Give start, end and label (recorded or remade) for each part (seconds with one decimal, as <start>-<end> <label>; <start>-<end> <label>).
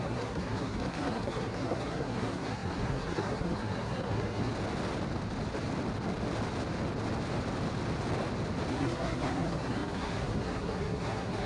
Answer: 0.0-4.5 remade; 4.5-8.7 recorded; 8.7-11.5 remade